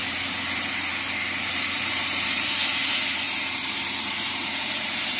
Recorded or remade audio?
remade